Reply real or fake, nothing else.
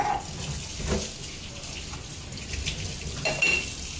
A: real